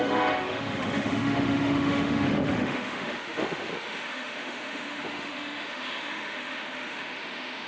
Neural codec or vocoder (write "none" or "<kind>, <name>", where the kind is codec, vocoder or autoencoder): autoencoder, DAC-VAE